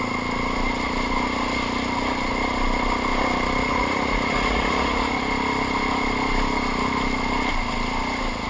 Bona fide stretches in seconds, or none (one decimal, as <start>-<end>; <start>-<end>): 0.0-3.6; 5.2-8.5